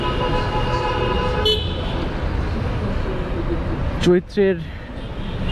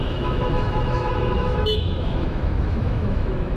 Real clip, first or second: first